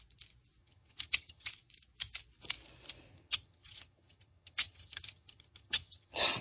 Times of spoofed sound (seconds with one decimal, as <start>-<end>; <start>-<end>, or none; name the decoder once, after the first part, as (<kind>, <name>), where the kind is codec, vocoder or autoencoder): 0.6-1.5 (vocoder, HiFi-GAN); 3.1-6.4